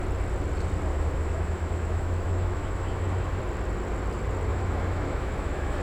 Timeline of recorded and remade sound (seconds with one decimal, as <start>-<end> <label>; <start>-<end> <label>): 0.0-0.9 recorded; 0.9-3.4 remade; 3.4-4.5 recorded; 4.5-5.8 remade